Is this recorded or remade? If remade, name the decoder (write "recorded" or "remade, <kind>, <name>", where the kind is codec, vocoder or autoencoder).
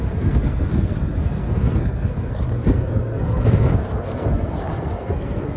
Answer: remade, codec, SNAC